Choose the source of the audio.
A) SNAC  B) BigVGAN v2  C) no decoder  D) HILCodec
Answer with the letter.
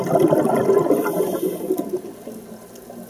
C